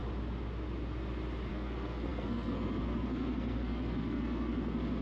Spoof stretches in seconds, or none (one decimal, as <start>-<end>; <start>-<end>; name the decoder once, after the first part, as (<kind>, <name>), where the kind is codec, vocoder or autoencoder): 1.5-5.0 (codec, SNAC)